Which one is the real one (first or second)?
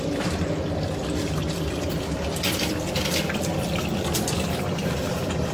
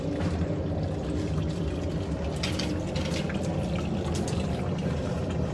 second